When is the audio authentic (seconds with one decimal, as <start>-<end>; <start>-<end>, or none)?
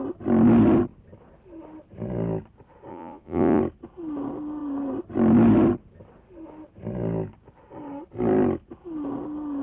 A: 0.0-2.9; 3.6-9.6